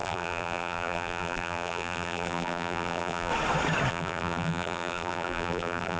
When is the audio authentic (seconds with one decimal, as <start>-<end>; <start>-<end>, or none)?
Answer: 3.3-3.9